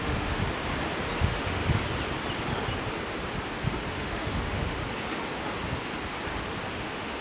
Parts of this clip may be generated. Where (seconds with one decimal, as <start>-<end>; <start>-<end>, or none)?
0.0-0.4; 1.2-1.6; 3.9-4.8; 6.7-7.2